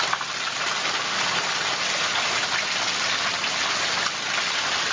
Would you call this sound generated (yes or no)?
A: no